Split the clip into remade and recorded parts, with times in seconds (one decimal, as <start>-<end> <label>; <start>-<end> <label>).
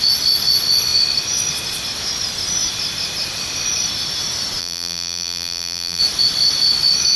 0.0-4.6 recorded; 4.6-6.0 remade; 6.0-7.2 recorded